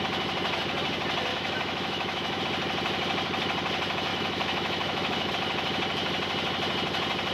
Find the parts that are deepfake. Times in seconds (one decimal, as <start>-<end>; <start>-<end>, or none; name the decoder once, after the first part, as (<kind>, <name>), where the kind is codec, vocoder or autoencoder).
1.3-2.4 (autoencoder, DAC-VAE); 4.1-5.3